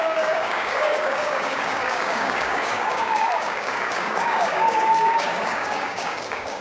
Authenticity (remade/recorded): remade